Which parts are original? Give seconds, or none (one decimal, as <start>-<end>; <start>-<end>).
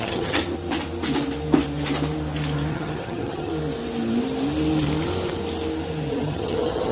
0.4-2.7; 3.5-6.1